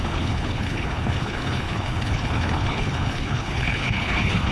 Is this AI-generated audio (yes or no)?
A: yes